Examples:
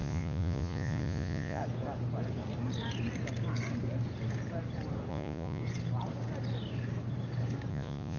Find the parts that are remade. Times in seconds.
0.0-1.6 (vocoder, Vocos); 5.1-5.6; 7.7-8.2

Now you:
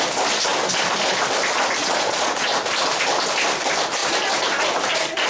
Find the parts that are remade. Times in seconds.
1.8-2.5 (vocoder, Vocos)

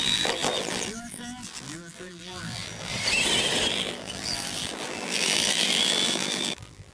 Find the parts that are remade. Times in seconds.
0.0-2.9 (vocoder, BigVGAN v2); 3.7-6.9

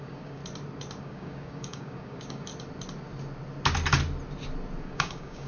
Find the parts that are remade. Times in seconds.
0.0-0.4 (codec, DAC); 1.0-2.5; 4.8-5.5

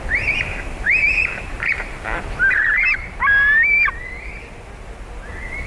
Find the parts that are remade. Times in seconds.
0.5-3.9 (vocoder, BigVGAN v2)

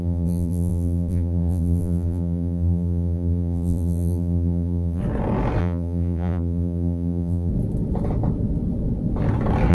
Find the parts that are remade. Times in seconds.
0.0-5.0 (vocoder, BigVGAN v2); 5.6-7.5

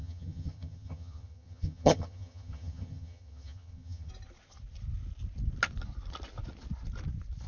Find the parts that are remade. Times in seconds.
0.0-4.1 (vocoder, HiFi-GAN)